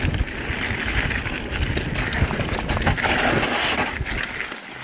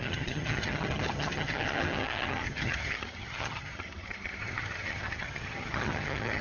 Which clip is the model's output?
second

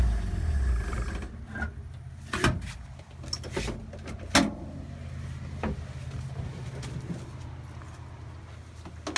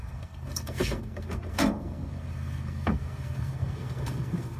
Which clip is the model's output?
second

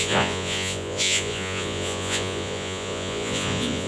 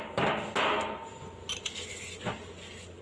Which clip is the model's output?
first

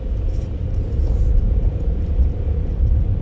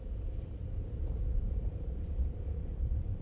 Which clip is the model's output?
second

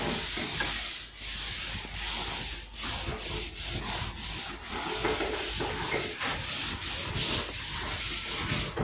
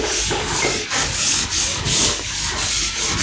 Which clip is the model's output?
second